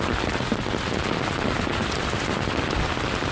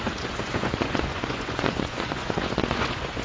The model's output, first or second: second